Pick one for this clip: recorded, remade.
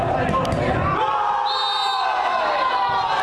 recorded